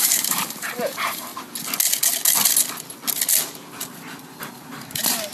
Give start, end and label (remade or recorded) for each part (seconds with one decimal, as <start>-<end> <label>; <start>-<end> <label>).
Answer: 0.0-1.3 remade; 1.3-4.5 recorded; 4.5-5.3 remade